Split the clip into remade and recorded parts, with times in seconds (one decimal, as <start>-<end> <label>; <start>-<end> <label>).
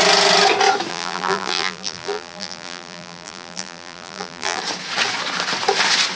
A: 0.0-0.9 recorded; 0.9-4.6 remade; 4.6-6.1 recorded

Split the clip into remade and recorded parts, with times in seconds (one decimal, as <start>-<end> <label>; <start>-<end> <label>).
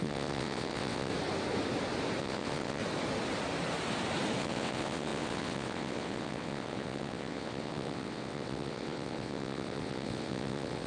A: 0.0-1.1 remade; 1.1-2.2 recorded; 2.2-2.8 remade; 2.8-4.4 recorded; 4.4-10.9 remade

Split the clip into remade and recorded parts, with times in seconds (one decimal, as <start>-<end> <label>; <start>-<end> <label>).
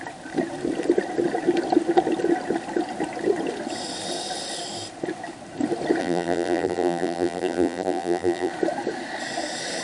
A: 0.0-6.0 recorded; 6.0-8.5 remade; 8.5-9.8 recorded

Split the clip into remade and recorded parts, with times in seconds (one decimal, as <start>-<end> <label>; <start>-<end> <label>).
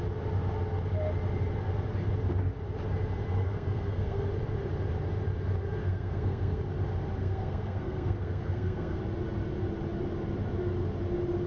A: 0.0-3.4 recorded; 3.4-4.3 remade; 4.3-5.8 recorded; 5.8-6.6 remade; 6.6-7.2 recorded; 7.2-9.0 remade; 9.0-11.5 recorded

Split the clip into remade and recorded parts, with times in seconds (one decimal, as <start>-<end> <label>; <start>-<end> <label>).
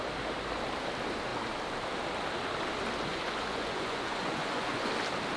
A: 0.0-3.1 recorded; 3.1-4.9 remade; 4.9-5.4 recorded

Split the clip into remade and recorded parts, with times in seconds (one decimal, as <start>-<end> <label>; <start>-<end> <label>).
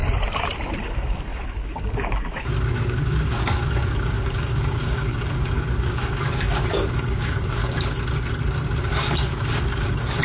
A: 0.0-0.8 recorded; 0.8-7.6 remade; 7.6-8.8 recorded; 8.8-10.2 remade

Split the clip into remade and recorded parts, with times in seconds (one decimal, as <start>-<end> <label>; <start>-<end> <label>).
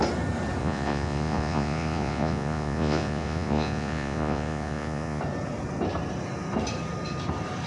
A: 0.0-0.6 recorded; 0.6-5.2 remade; 5.2-7.7 recorded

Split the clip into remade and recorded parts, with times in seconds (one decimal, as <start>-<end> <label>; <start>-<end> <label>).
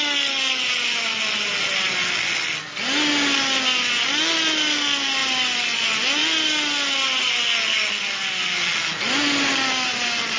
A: 0.0-10.4 recorded